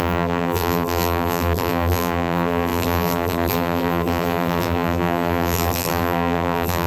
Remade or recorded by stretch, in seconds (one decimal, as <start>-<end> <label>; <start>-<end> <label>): 0.0-6.9 remade